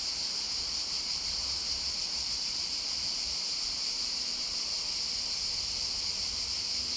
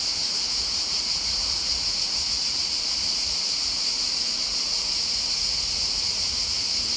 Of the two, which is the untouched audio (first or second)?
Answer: first